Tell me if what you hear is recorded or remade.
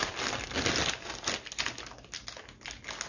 recorded